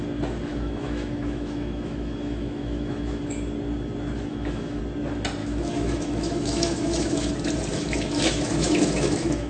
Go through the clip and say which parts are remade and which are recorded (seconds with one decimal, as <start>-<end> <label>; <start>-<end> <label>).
0.0-0.5 recorded; 0.5-3.2 remade; 3.2-4.3 recorded; 4.3-4.8 remade; 4.8-5.4 recorded; 5.4-7.3 remade; 7.3-7.7 recorded; 7.7-9.5 remade